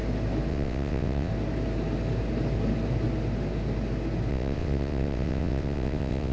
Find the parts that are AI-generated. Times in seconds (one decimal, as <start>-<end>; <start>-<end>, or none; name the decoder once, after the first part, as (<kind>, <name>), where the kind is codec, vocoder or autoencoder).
0.5-1.3 (vocoder, WaveNeXt); 4.3-6.3